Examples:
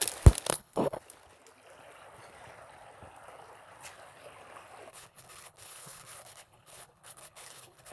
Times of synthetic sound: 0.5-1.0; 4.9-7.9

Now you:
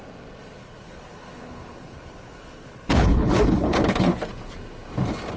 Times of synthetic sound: 0.6-3.8

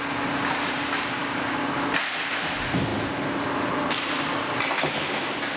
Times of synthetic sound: none

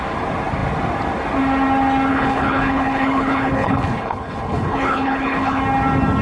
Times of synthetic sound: 2.1-5.6